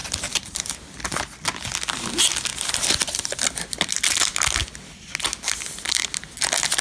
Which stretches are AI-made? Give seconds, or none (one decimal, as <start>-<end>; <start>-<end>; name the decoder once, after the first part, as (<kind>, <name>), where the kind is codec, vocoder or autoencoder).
none